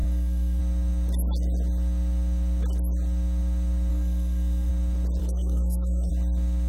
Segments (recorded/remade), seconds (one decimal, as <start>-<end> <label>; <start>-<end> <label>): 0.0-0.6 remade; 0.6-3.9 recorded; 3.9-4.7 remade; 4.7-5.2 recorded; 5.2-6.1 remade; 6.1-6.7 recorded